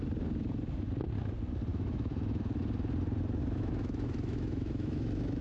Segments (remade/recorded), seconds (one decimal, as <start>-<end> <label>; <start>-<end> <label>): 0.0-1.7 recorded; 1.7-2.4 remade; 2.4-3.4 recorded; 3.4-5.4 remade